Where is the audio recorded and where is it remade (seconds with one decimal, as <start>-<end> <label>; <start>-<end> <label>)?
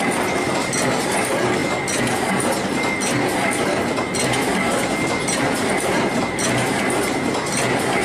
0.0-8.0 recorded